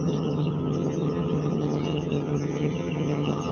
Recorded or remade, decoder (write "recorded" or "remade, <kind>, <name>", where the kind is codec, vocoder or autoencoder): remade, vocoder, HiFi-GAN